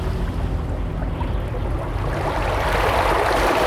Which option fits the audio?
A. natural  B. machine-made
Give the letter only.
A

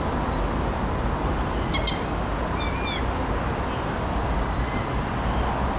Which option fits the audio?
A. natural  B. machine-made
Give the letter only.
A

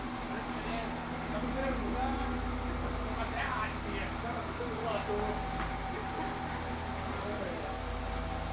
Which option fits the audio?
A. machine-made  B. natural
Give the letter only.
B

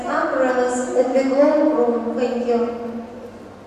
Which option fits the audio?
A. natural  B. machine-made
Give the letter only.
A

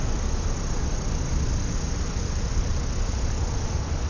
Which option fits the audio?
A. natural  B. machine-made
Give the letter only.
A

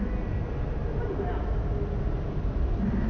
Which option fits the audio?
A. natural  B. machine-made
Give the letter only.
A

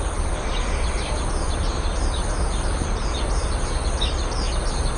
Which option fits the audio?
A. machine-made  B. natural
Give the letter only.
B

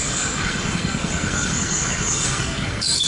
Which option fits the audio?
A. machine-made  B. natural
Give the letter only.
A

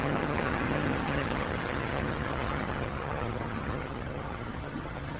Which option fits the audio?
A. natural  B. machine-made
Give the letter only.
B